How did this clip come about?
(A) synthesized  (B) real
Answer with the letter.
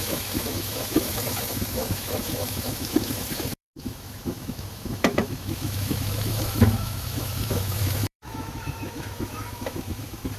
A